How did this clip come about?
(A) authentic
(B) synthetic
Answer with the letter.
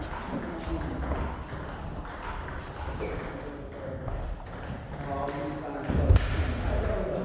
A